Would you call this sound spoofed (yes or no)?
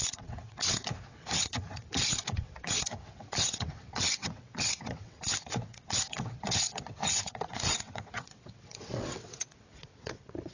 yes